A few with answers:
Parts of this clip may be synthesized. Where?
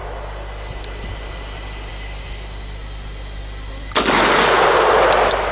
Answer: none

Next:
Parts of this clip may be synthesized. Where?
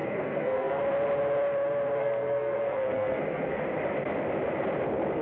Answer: 0.0-0.8 (codec, SNAC); 2.0-3.6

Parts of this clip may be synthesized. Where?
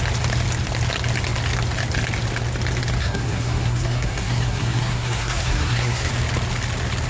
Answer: 3.0-6.1 (codec, SNAC)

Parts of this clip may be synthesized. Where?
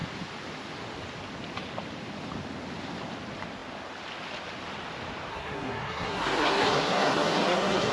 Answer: 5.3-7.9 (codec, SNAC)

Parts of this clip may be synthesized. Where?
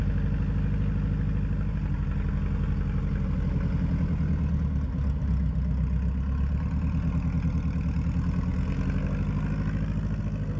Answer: none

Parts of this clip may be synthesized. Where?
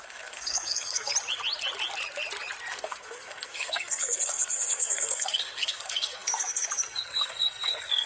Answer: 0.0-1.1 (codec, SNAC); 2.7-8.1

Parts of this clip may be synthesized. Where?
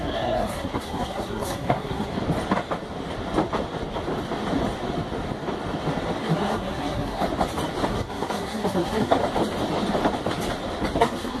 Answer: 0.0-2.1 (codec, SNAC); 6.2-7.2; 7.9-9.2; 11.0-11.4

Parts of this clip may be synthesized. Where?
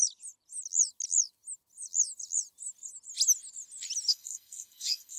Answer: 4.1-5.2 (codec, SNAC)